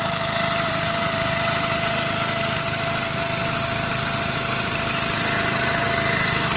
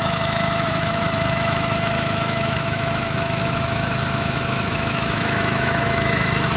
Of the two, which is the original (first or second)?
first